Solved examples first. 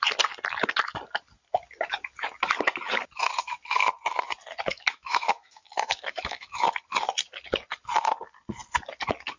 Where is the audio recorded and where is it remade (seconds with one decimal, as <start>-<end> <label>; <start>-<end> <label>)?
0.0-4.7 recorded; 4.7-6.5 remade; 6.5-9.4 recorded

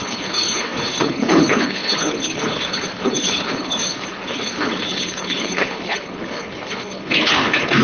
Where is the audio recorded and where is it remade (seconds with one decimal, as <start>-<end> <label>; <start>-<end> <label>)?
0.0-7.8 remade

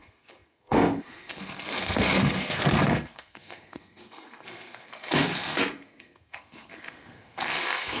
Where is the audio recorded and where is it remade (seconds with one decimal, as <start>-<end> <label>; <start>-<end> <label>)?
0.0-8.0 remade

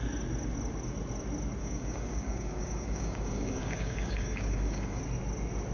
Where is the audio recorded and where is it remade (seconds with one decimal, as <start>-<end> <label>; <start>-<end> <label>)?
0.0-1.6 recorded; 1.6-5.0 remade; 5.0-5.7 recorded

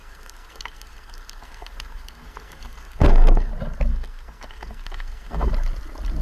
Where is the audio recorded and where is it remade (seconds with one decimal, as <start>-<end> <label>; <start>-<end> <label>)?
0.0-3.5 remade; 3.5-3.9 recorded; 3.9-5.5 remade; 5.5-6.2 recorded

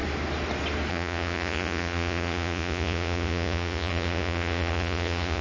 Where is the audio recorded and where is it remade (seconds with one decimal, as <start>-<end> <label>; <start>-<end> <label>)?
0.0-0.9 recorded; 0.9-5.4 remade

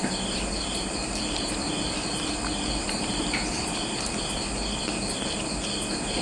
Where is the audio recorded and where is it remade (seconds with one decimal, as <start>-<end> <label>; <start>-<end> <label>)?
0.0-0.5 recorded; 0.5-4.2 remade; 4.2-6.2 recorded

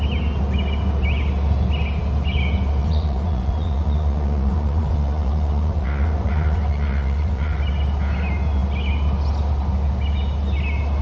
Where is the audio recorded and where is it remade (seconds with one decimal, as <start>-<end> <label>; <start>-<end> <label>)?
0.0-2.8 recorded; 2.8-7.6 remade; 7.6-11.0 recorded